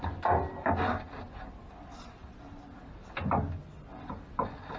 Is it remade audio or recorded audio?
recorded